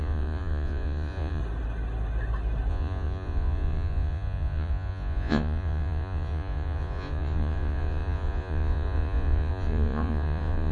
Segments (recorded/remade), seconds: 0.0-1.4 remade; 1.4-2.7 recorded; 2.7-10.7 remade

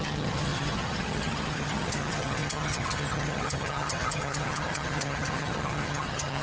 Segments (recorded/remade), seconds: 0.0-6.4 remade

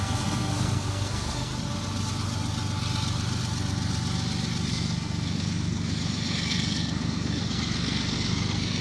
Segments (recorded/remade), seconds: 0.0-1.5 remade; 1.5-4.7 recorded; 4.7-8.8 remade

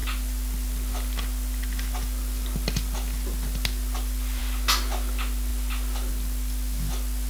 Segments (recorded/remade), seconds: 0.0-7.3 recorded

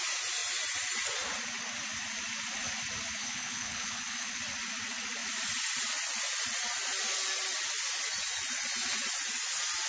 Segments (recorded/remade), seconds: 0.0-3.2 recorded; 3.2-4.4 remade; 4.4-9.9 recorded

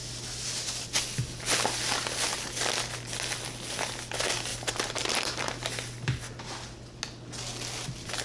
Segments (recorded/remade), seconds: 0.0-4.5 recorded; 4.5-5.5 remade; 5.5-8.2 recorded

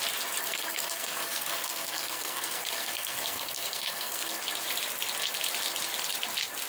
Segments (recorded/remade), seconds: 0.0-0.4 recorded; 0.4-4.4 remade; 4.4-6.7 recorded